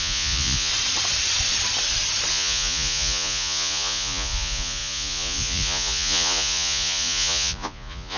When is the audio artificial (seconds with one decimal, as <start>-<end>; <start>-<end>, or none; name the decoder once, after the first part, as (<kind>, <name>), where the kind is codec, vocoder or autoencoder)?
0.0-0.7 (vocoder, Vocos); 2.3-8.2